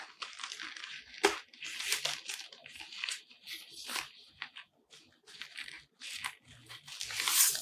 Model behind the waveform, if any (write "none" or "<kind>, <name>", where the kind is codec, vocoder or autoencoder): none